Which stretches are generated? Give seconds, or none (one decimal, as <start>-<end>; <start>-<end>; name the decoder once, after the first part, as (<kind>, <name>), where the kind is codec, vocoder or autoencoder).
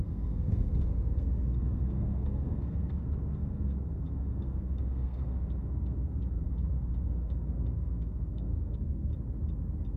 0.0-9.1 (codec, SNAC)